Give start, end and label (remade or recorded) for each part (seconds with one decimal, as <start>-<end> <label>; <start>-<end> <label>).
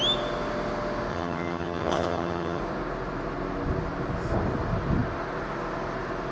0.0-1.1 recorded; 1.1-2.6 remade; 2.6-6.3 recorded